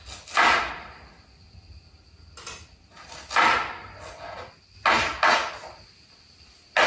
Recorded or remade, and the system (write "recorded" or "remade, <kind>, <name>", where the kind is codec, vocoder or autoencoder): recorded